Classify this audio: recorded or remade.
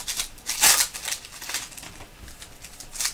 recorded